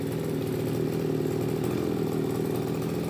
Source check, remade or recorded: recorded